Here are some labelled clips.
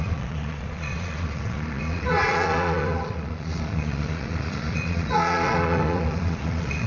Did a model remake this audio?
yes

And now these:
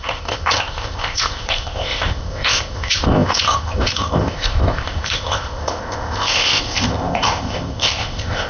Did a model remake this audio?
yes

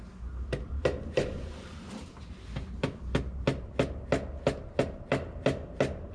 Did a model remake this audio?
no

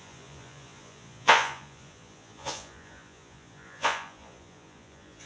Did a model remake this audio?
yes